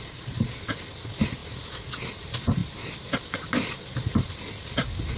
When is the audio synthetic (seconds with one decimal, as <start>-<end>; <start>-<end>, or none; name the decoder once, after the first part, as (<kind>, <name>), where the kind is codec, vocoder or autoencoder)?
none